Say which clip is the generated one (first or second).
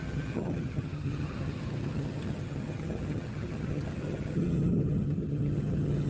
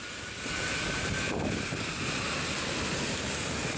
first